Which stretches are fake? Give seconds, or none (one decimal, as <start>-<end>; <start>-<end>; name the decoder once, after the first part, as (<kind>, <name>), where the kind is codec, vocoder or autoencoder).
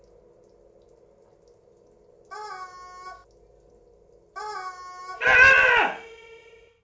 none